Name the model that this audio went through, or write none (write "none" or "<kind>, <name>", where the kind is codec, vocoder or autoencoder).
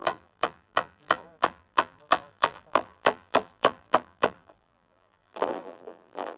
vocoder, BigVGAN v2